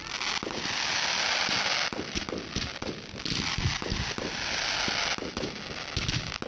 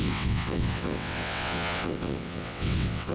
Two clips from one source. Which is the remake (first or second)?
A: second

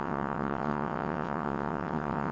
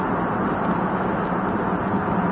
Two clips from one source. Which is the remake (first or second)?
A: first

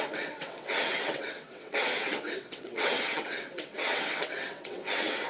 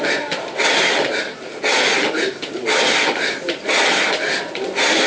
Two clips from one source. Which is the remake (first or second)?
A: first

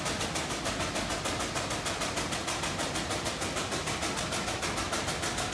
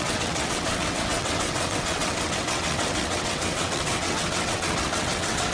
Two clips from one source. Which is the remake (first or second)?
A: second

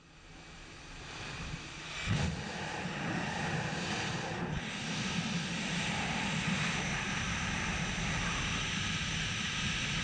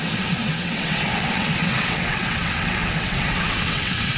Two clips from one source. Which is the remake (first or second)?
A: second